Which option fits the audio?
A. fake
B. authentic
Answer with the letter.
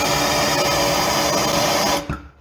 B